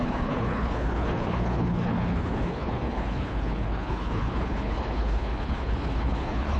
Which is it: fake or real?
fake